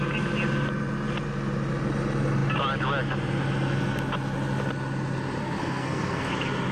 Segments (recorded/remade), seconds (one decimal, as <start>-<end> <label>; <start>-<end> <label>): 0.0-5.4 recorded; 5.4-6.3 remade; 6.3-6.7 recorded

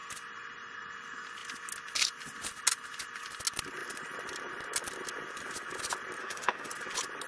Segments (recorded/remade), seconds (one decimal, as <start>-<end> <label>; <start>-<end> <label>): 0.0-6.2 recorded; 6.2-6.7 remade; 6.7-7.3 recorded

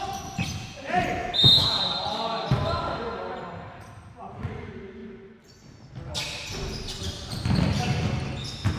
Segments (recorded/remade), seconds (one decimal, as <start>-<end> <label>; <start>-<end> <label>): 0.0-1.2 recorded; 1.2-1.8 remade; 1.8-8.8 recorded

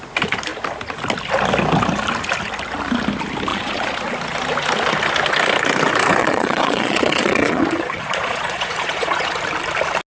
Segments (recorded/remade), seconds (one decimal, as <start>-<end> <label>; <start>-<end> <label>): 0.0-3.5 recorded; 3.5-4.0 remade; 4.0-6.2 recorded; 6.2-9.4 remade; 9.4-10.1 recorded

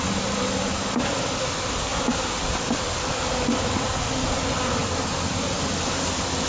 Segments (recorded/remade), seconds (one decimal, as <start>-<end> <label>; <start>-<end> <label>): 0.0-6.5 recorded

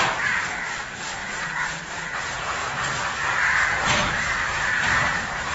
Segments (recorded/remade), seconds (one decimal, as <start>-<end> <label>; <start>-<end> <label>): 0.0-2.6 remade; 2.6-3.6 recorded; 3.6-5.5 remade

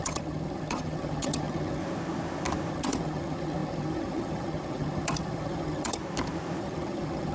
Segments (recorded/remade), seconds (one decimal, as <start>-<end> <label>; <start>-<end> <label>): 0.0-1.8 remade; 1.8-2.7 recorded; 2.7-6.0 remade; 6.0-6.6 recorded; 6.6-7.3 remade